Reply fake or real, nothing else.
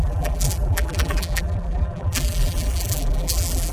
fake